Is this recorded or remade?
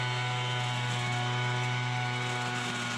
recorded